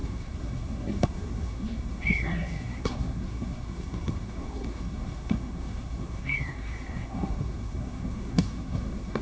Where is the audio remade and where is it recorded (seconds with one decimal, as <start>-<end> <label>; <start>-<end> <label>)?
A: 0.0-9.2 remade